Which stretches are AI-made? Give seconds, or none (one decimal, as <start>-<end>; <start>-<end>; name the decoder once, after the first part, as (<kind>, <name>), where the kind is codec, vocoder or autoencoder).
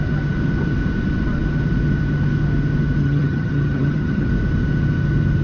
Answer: 3.0-4.3 (vocoder, HiFi-GAN)